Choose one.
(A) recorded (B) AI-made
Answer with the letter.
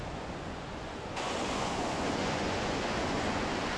B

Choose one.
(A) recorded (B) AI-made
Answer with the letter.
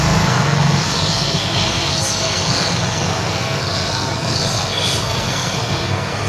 B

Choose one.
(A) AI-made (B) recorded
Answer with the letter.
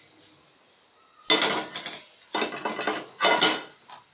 B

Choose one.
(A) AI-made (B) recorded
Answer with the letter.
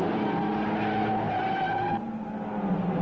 B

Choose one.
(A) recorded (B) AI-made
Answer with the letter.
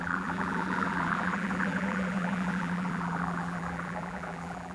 B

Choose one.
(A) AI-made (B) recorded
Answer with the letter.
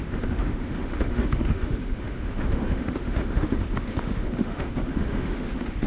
A